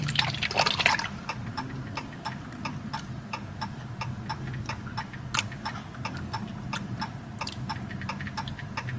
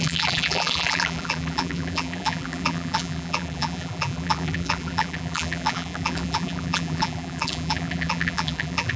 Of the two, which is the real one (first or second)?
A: first